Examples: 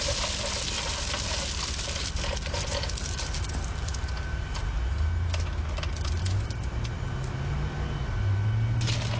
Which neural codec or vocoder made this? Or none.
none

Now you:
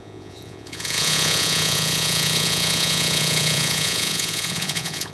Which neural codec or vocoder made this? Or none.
vocoder, Vocos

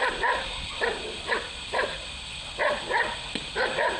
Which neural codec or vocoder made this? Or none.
none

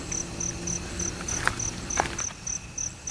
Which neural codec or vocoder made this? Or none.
none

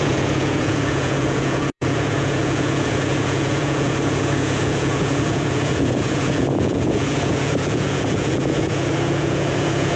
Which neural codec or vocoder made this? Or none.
vocoder, Vocos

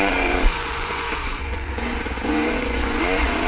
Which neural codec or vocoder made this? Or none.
vocoder, Vocos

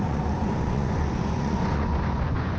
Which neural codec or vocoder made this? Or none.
vocoder, Vocos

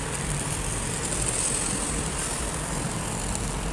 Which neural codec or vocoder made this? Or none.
none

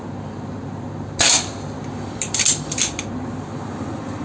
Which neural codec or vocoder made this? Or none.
none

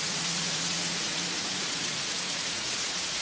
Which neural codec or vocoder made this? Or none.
vocoder, Vocos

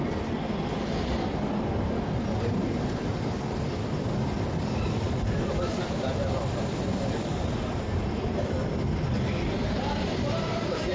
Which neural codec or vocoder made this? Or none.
none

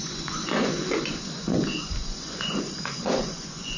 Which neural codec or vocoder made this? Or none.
vocoder, Vocos